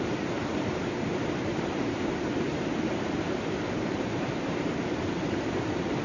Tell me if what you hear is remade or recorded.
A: remade